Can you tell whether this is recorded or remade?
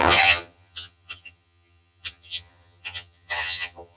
remade